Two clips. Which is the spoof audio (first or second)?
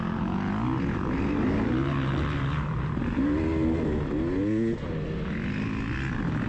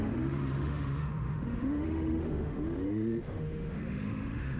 second